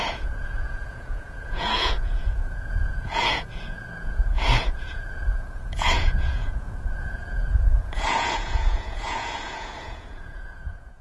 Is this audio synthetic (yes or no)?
yes